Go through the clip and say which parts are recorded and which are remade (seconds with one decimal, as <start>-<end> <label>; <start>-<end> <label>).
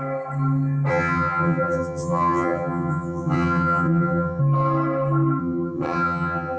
0.0-0.9 recorded; 0.9-4.4 remade; 4.4-5.4 recorded; 5.4-6.6 remade